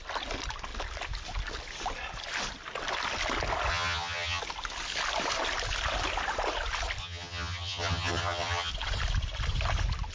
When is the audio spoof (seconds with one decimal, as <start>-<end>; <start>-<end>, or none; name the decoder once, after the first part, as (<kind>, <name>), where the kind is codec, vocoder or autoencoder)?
3.7-4.4 (vocoder, HiFi-GAN); 7.0-8.7